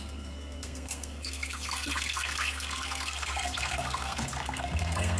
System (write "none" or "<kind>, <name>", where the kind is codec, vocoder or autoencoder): codec, SNAC